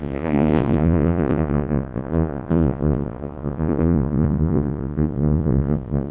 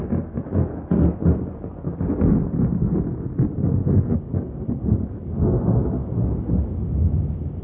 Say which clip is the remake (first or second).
first